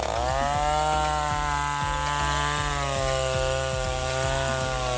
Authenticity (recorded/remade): recorded